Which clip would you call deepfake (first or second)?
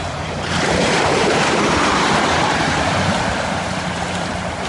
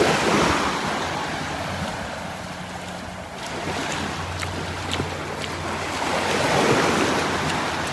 first